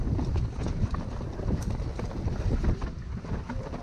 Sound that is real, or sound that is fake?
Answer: real